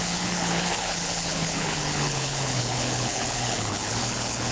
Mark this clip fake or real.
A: fake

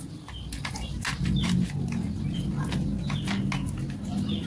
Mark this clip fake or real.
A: real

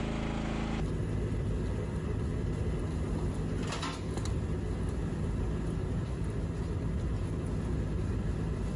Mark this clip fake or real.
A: real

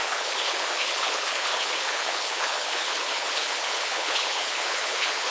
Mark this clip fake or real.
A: fake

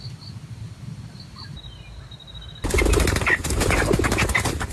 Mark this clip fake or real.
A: real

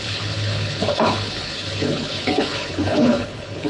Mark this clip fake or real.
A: fake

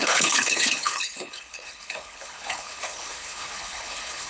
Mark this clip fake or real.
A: fake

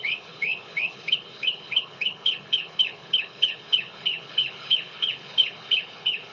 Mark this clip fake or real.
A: fake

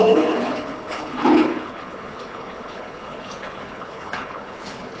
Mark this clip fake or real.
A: fake